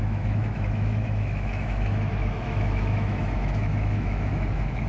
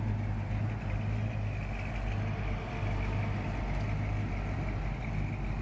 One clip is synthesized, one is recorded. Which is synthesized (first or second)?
first